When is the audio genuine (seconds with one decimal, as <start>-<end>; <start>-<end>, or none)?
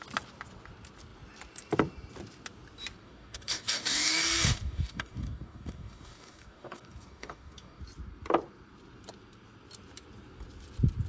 0.0-3.0; 7.8-11.1